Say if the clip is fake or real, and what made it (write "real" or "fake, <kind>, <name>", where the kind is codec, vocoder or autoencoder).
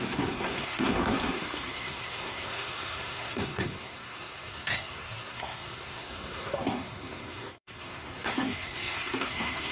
fake, codec, SNAC